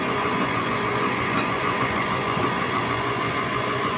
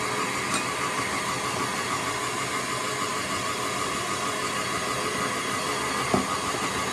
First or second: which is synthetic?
first